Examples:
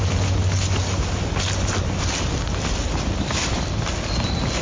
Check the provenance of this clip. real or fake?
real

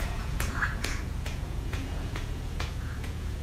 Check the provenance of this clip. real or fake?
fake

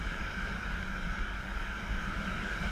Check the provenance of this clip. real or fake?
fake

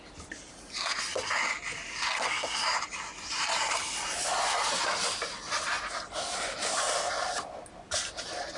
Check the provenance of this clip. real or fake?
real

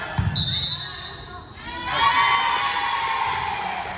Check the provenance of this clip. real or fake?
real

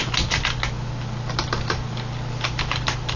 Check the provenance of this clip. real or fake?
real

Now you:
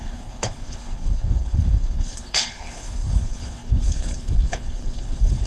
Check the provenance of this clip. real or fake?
fake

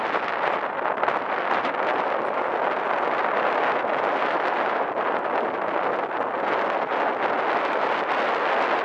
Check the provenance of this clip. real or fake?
real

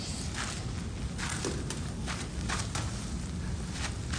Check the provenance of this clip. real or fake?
real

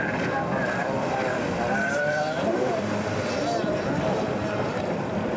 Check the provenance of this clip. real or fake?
fake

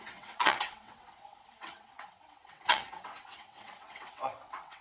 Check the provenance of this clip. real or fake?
fake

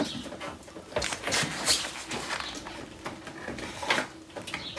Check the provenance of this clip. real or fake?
real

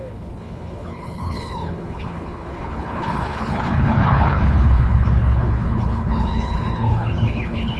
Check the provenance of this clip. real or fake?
fake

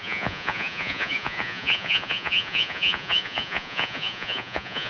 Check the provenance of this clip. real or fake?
fake